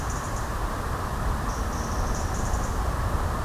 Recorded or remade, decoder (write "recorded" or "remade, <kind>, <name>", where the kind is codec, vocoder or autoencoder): remade, vocoder, BigVGAN v2